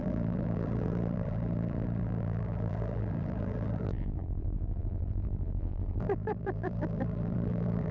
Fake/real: fake